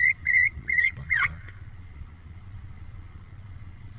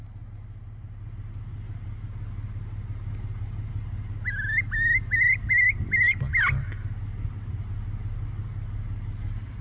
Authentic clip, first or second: second